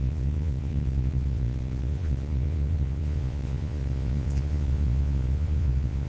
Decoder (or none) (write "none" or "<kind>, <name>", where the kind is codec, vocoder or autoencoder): vocoder, Vocos